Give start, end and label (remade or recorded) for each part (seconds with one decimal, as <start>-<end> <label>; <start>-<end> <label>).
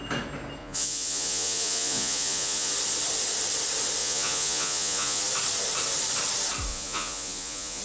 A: 0.0-0.6 recorded; 0.6-2.7 remade; 2.7-4.0 recorded; 4.0-5.2 remade; 5.2-6.7 recorded; 6.7-7.8 remade